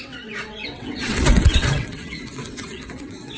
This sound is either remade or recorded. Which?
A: remade